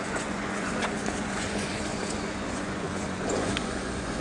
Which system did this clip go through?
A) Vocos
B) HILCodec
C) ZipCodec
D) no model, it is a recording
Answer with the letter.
A